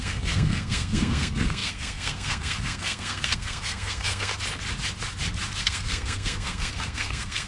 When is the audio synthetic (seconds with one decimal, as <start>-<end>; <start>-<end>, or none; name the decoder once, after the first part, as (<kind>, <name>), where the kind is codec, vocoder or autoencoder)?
0.0-4.3 (codec, SNAC); 5.6-7.5